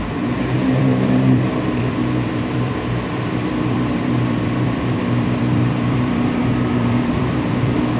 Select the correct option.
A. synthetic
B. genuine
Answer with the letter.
A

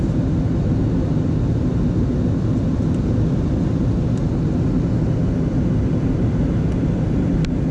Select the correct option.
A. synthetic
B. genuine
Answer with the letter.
B